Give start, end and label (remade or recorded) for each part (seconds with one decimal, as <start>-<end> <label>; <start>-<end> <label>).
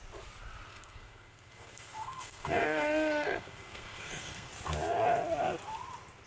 0.0-0.7 recorded; 0.7-4.5 remade; 4.5-6.3 recorded